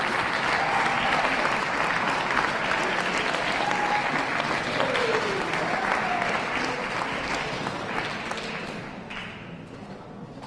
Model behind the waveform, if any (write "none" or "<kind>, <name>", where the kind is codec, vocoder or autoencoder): none